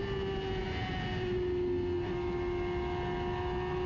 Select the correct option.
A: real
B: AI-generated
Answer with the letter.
A